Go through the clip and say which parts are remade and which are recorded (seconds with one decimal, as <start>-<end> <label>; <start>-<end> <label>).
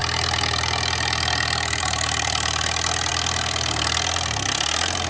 0.0-5.1 recorded